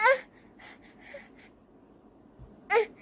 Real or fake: real